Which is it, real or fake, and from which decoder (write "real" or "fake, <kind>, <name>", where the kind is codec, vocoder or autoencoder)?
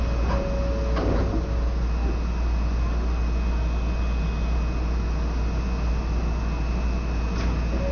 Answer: real